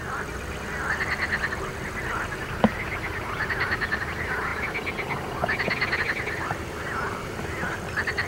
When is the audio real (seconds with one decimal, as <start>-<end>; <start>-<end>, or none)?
0.0-8.3